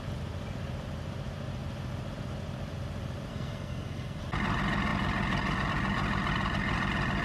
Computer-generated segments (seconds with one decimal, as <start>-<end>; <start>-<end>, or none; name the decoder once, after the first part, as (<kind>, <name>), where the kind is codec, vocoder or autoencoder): 3.3-4.2 (codec, SNAC)